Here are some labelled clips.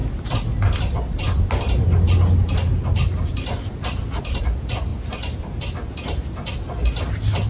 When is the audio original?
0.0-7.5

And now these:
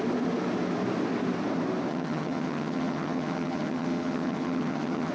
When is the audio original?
0.0-1.9

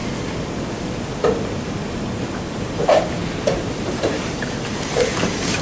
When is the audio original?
0.0-1.6

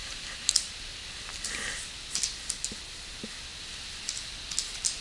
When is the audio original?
0.0-5.0

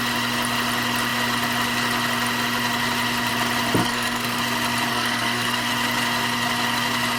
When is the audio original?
0.0-3.8; 4.4-4.9; 5.7-7.2

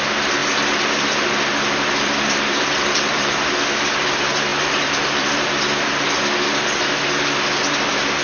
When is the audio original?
0.0-0.4; 3.5-4.5; 5.5-8.2

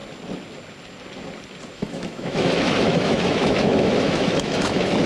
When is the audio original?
0.0-1.7

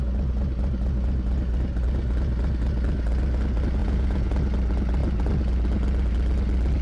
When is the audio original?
0.0-3.8; 4.3-6.8